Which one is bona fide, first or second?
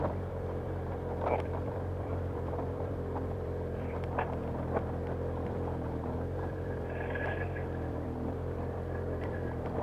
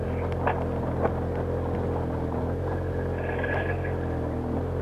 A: second